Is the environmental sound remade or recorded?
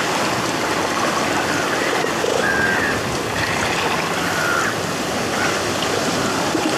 recorded